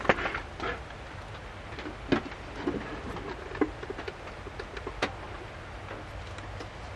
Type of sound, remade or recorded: recorded